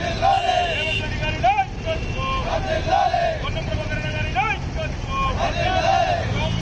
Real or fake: real